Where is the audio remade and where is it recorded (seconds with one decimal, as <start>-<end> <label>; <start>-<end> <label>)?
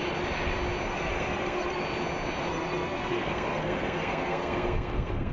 0.0-0.9 recorded; 0.9-1.8 remade; 1.8-2.5 recorded; 2.5-5.3 remade